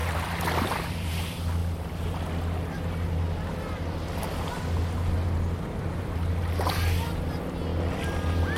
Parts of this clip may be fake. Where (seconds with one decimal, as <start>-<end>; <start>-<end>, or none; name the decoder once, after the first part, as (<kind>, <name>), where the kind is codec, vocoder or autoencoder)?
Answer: 0.0-1.1 (vocoder, BigVGAN v2)